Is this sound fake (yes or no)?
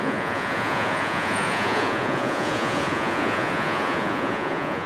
yes